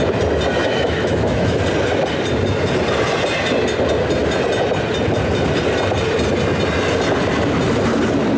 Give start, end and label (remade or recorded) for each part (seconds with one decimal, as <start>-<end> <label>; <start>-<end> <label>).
0.0-0.6 recorded; 0.6-1.6 remade; 1.6-8.4 recorded